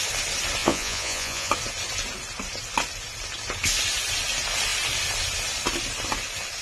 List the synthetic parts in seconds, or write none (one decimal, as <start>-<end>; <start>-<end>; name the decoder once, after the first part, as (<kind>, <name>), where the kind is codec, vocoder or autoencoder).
0.6-1.5 (vocoder, Vocos)

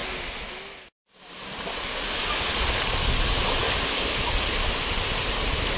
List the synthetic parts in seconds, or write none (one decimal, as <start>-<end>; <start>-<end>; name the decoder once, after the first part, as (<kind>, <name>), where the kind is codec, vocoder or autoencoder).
none

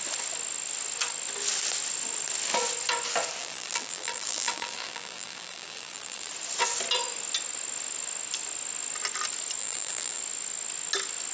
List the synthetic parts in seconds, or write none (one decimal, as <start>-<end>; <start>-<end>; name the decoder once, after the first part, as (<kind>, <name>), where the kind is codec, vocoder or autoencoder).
3.4-6.3 (vocoder, BigVGAN v2); 9.6-10.2

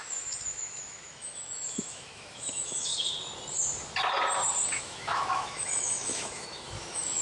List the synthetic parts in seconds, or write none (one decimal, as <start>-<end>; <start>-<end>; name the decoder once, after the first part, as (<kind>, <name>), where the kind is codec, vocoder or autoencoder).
0.0-2.9 (autoencoder, DAC-VAE); 4.7-7.2